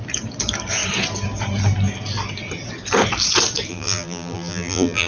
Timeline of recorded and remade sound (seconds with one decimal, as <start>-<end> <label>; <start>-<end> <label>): 0.0-3.7 recorded; 3.7-5.1 remade